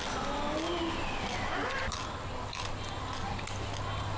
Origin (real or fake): real